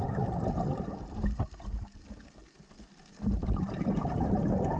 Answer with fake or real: real